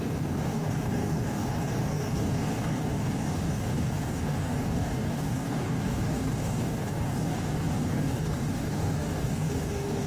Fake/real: fake